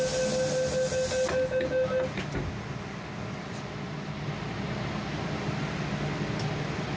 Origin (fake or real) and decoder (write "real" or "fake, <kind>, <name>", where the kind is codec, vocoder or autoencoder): real